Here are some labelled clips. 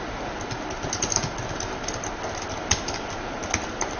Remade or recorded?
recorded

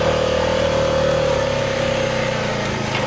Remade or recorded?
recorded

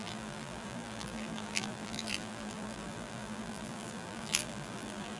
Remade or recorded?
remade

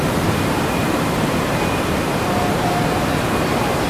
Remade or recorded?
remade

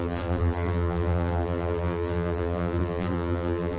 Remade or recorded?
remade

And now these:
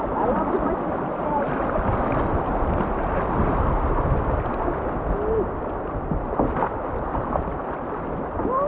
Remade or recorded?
recorded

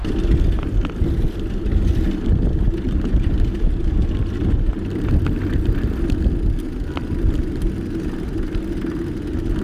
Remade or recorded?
recorded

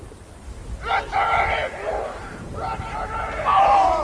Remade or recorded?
remade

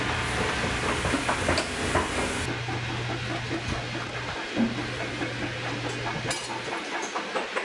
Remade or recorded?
recorded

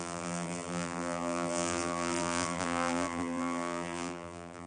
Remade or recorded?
remade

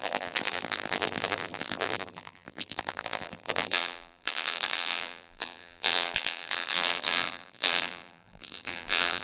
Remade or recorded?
remade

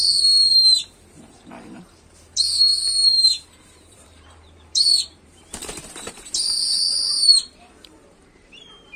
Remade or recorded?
remade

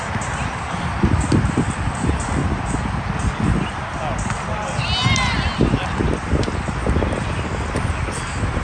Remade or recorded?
recorded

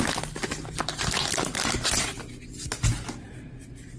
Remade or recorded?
recorded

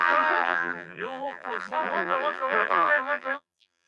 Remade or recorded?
remade